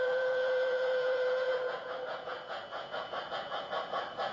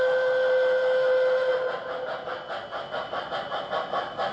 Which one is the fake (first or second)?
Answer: first